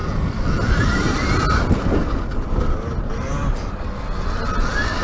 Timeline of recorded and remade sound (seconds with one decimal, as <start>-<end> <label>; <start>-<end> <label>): 0.0-3.0 recorded; 3.0-3.4 remade; 3.4-5.0 recorded